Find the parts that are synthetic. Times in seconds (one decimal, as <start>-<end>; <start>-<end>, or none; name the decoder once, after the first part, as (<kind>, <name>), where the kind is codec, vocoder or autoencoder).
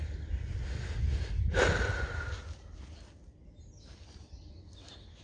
none